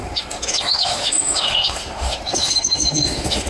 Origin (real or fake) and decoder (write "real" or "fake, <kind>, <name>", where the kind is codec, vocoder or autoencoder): fake, autoencoder, DAC-VAE